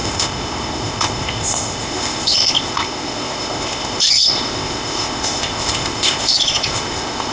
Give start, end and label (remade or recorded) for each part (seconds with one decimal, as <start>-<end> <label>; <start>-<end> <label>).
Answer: 0.0-7.3 remade